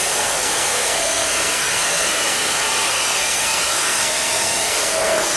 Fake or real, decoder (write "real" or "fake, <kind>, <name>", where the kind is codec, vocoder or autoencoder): fake, codec, SNAC